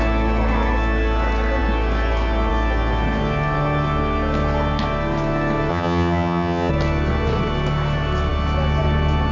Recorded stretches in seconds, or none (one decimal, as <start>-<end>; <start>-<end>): 0.0-5.7; 6.7-9.3